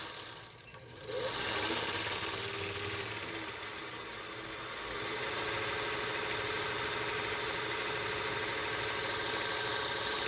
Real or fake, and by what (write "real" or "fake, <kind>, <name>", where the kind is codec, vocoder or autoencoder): real